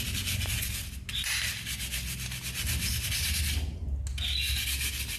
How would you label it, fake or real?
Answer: real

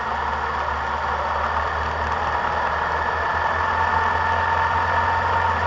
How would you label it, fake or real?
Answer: real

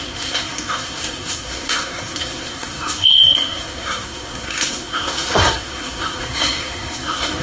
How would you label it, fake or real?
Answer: fake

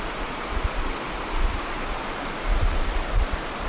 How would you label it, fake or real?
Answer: fake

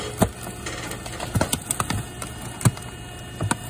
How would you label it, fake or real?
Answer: real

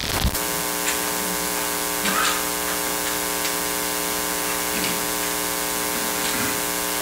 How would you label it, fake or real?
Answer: real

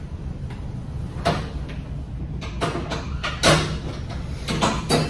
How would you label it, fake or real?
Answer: real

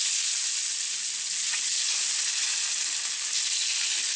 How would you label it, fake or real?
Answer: real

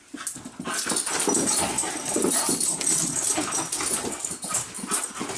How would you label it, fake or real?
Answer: real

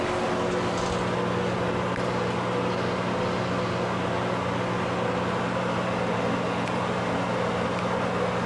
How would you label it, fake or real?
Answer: real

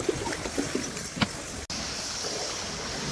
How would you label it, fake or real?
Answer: real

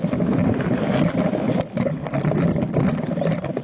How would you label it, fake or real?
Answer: real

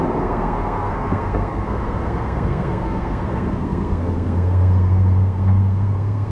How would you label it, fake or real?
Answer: fake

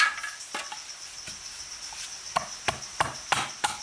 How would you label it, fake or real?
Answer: real